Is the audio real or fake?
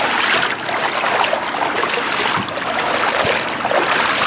real